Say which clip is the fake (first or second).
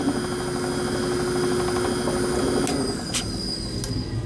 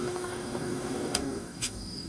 second